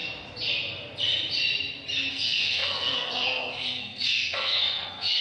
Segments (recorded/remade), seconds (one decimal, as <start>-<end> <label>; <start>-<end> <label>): 0.0-2.1 recorded; 2.1-5.2 remade